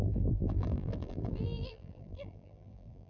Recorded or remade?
remade